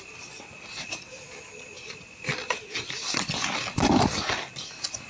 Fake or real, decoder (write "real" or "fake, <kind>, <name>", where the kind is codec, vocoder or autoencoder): real